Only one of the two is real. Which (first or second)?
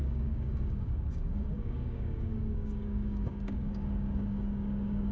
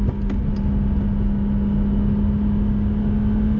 second